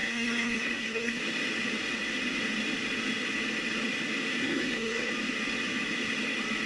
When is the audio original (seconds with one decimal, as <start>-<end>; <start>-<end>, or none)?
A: 1.2-4.4; 5.1-6.7